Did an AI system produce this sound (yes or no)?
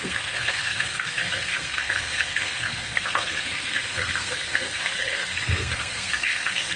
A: yes